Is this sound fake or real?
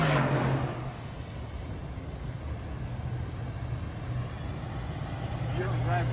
real